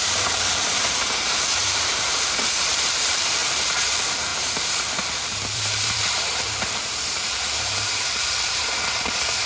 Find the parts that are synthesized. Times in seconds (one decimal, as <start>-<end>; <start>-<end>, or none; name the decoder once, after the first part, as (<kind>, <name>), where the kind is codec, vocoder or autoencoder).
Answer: 0.0-4.3 (vocoder, BigVGAN v2); 4.8-9.5